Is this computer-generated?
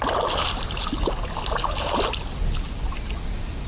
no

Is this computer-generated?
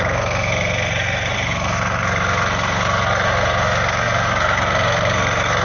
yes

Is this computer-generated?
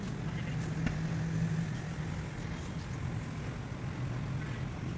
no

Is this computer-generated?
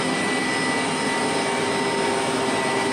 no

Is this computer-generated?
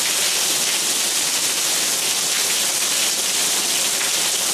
no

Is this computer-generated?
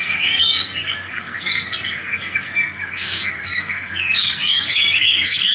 yes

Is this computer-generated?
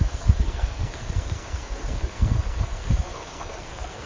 yes